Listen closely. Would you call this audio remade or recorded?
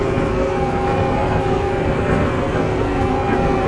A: remade